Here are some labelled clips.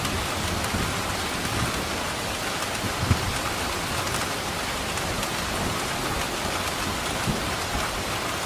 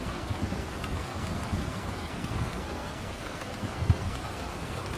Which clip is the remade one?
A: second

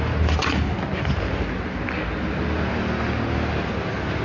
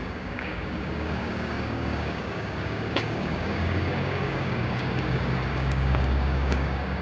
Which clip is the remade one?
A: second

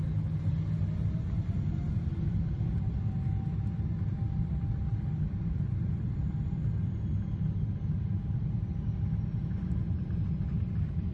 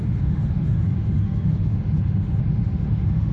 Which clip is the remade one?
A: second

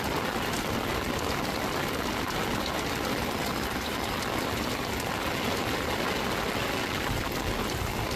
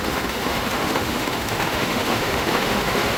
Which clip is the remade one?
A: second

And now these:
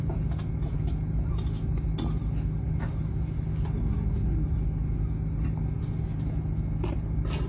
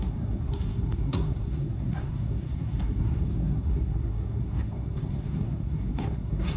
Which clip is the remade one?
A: second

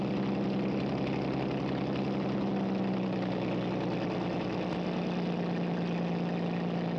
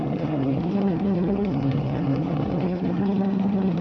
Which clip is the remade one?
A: second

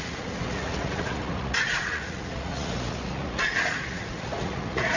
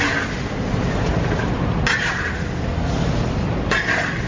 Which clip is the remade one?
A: first